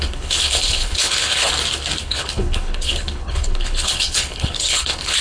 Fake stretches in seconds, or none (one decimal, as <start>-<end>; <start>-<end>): 0.0-1.5; 2.0-5.2